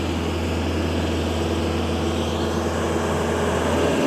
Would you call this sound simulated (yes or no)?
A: no